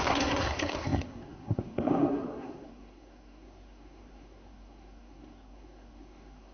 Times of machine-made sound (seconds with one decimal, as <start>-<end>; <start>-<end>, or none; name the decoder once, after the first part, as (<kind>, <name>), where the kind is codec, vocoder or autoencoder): 0.0-6.5 (codec, SNAC)